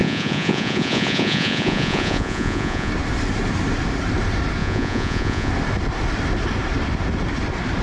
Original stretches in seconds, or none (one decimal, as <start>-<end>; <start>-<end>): 2.9-4.6; 5.5-7.8